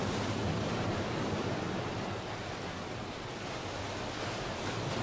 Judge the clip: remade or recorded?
recorded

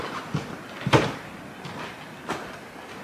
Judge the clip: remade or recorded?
recorded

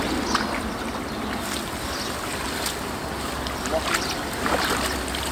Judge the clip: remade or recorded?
recorded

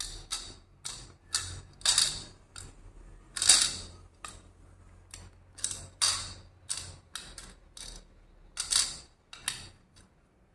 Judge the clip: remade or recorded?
recorded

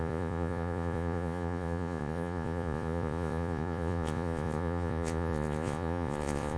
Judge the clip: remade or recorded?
remade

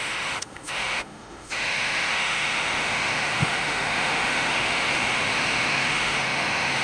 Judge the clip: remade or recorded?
remade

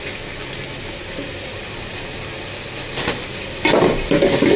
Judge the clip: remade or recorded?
recorded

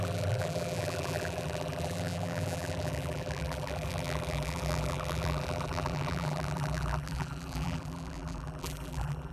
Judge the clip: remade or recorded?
remade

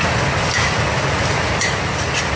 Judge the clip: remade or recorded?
recorded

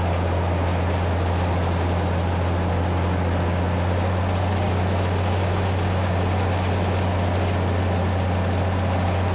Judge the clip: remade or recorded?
recorded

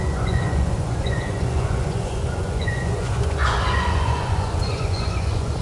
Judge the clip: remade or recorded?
remade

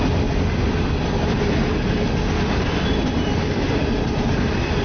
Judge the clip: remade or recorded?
recorded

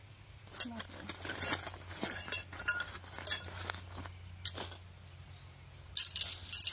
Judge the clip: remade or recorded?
recorded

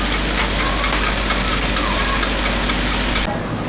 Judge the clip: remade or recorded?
recorded